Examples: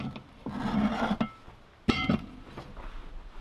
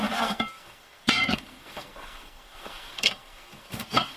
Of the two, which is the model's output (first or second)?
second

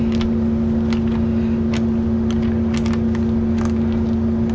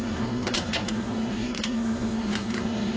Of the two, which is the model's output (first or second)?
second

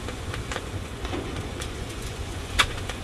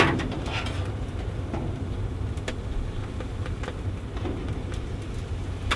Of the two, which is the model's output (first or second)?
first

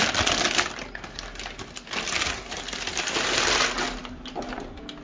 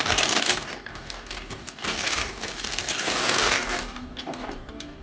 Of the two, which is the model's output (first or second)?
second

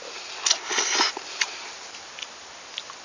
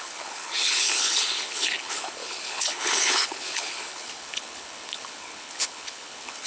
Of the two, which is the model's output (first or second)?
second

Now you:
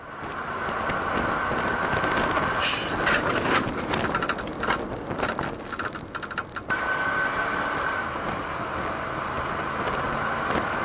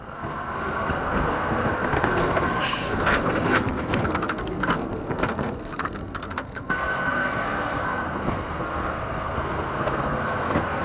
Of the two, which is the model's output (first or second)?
second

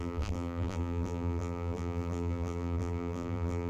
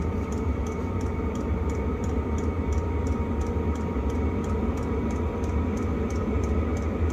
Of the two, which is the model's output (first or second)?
first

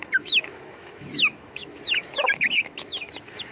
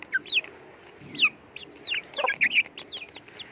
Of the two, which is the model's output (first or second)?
first